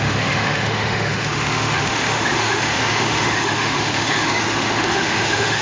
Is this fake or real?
fake